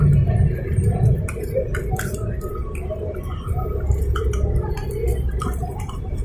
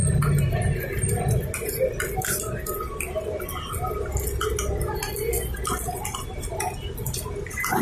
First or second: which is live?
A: second